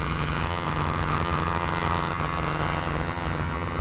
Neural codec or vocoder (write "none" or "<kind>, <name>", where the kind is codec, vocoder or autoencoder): vocoder, HiFi-GAN